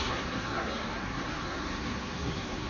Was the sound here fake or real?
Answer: fake